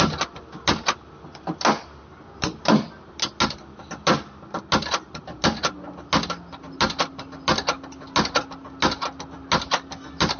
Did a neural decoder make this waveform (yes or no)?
no